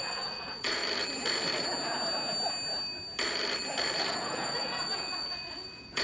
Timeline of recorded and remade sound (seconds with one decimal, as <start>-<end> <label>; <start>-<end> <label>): 0.0-0.8 remade; 0.8-4.1 recorded; 4.1-6.0 remade